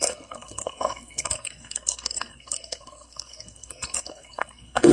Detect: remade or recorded remade